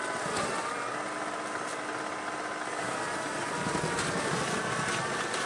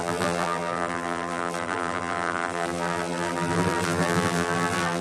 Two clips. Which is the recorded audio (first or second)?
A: first